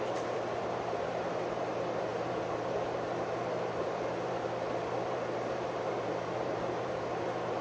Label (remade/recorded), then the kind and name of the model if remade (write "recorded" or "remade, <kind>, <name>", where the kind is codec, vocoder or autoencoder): remade, vocoder, BigVGAN v2